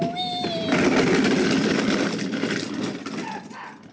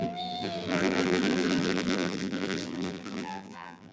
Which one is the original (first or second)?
first